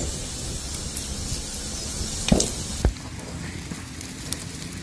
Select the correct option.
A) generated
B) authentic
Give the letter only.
B